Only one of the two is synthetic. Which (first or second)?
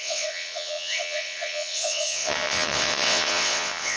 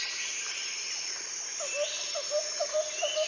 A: first